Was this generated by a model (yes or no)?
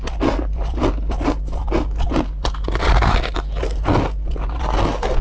no